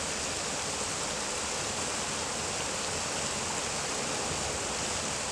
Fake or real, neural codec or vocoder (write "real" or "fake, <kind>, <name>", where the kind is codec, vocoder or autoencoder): real